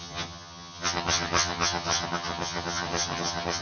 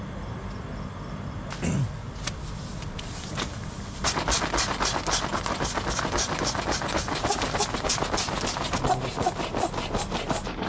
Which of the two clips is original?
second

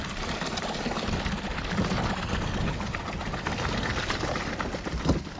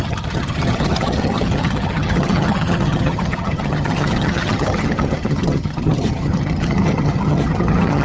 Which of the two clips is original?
first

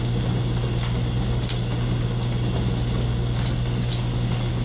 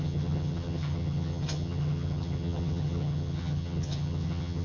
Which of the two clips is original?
first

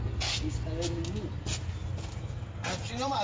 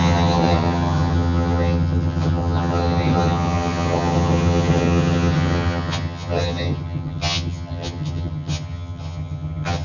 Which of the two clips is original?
first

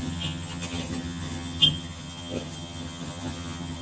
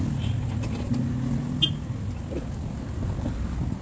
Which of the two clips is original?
second